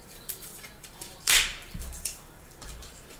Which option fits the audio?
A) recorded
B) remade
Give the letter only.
B